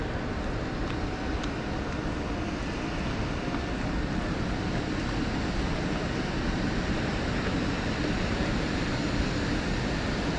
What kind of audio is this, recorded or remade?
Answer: recorded